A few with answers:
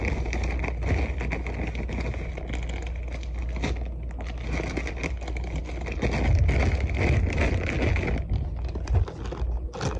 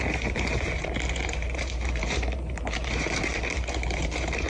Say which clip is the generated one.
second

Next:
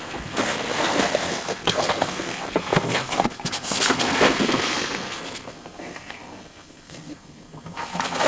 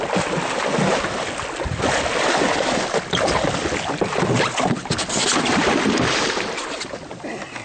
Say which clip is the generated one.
first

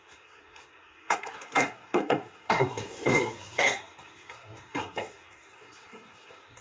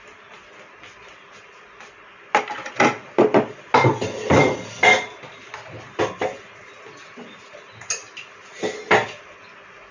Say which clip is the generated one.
first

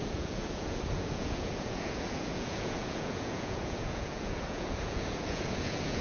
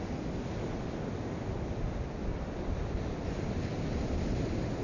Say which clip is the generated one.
first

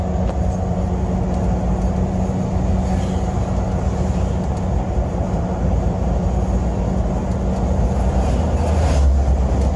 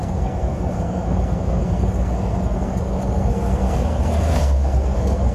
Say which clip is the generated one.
second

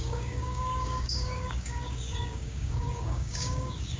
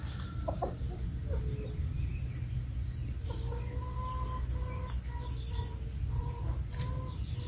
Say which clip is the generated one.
first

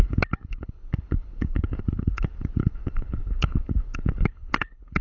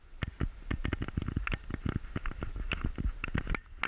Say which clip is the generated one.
first